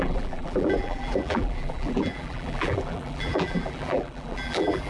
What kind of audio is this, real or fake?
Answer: fake